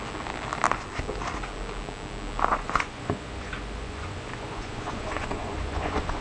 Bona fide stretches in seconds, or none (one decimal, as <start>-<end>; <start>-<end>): 0.0-2.5